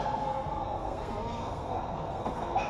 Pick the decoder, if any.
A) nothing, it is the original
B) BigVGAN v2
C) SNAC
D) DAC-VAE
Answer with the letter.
C